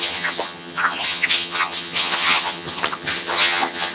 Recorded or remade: remade